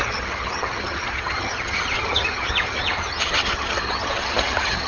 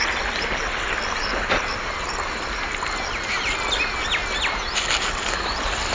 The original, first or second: second